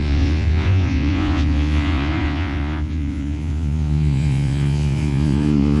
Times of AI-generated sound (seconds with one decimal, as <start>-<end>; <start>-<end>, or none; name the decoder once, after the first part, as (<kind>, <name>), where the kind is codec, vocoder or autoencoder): 0.0-5.8 (vocoder, Vocos)